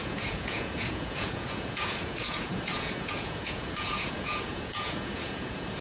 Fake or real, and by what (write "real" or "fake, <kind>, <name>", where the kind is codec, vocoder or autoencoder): fake, vocoder, Vocos